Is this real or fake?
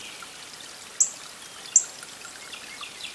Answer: real